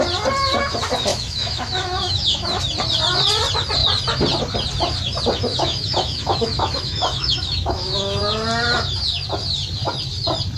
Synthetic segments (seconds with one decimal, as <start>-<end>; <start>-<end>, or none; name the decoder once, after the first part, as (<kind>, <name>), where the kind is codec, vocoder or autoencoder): 1.1-2.6 (autoencoder, DAC-VAE); 5.5-8.2